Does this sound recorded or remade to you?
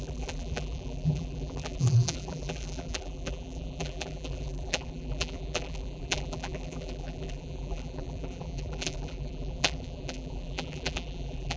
remade